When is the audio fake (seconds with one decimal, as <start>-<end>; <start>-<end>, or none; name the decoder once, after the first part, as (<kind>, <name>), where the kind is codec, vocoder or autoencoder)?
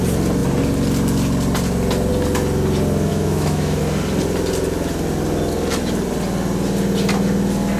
3.1-3.8 (autoencoder, DAC-VAE)